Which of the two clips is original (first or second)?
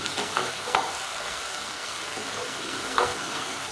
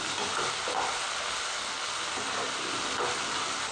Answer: second